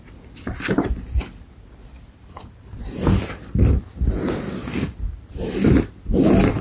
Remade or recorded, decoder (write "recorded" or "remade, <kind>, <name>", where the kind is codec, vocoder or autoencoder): recorded